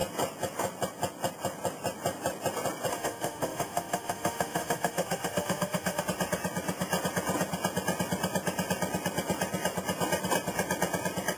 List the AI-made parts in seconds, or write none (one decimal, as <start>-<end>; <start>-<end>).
2.9-6.0